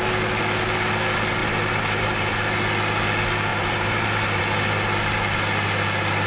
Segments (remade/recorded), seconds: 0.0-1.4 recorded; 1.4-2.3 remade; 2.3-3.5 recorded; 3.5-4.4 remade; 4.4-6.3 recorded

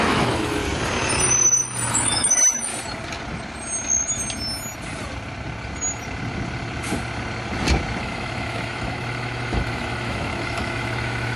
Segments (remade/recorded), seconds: 0.0-0.6 remade; 0.6-1.9 recorded; 1.9-2.7 remade; 2.7-8.0 recorded; 8.0-11.4 remade

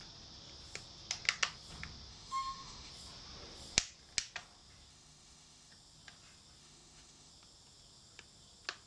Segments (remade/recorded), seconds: 0.0-2.1 recorded; 2.1-2.9 remade; 2.9-4.9 recorded; 4.9-5.7 remade; 5.7-6.6 recorded; 6.6-7.3 remade; 7.3-8.9 recorded

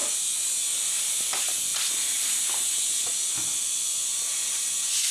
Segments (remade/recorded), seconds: 0.0-5.1 recorded